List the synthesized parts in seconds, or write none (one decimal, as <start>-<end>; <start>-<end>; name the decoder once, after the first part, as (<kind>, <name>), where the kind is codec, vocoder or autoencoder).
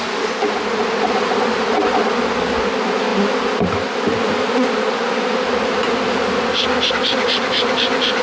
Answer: none